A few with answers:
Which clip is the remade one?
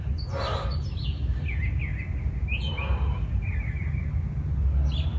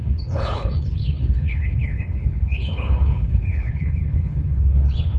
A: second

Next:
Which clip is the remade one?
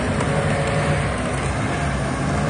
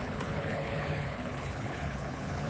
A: second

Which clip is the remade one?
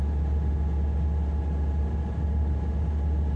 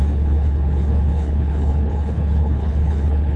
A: second